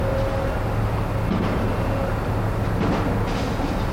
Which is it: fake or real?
real